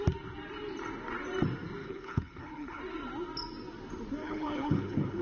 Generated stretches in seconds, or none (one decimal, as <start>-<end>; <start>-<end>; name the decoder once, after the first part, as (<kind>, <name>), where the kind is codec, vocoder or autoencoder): 1.8-2.8 (codec, HILCodec); 4.2-5.2